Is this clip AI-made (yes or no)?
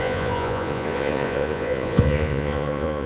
yes